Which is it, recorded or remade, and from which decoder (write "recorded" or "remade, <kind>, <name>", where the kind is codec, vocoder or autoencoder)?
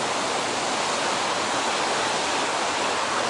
recorded